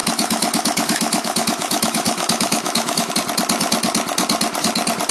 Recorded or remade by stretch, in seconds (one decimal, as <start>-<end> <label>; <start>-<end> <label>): 0.0-3.1 remade; 3.1-5.1 recorded